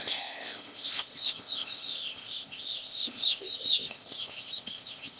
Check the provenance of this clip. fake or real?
fake